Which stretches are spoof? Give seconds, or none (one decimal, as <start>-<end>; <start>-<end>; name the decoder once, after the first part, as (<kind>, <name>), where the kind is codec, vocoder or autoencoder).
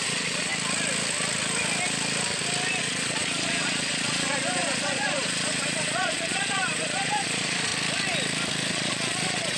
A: 0.0-0.5 (vocoder, Vocos); 2.8-7.7; 8.7-9.6